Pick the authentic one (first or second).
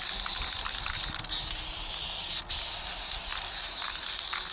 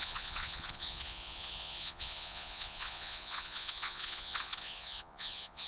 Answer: first